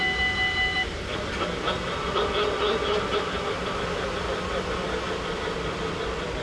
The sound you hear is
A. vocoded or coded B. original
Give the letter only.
B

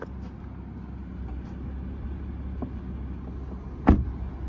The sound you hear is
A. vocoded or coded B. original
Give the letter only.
B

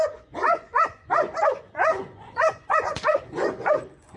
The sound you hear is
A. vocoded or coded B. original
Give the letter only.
A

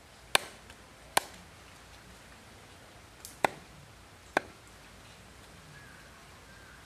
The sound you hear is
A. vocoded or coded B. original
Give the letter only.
B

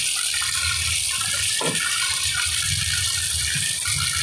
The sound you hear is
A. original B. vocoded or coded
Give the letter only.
A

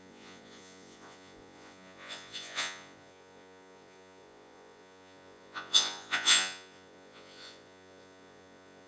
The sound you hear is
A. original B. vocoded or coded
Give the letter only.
B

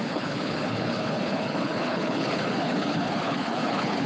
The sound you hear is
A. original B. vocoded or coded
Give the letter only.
B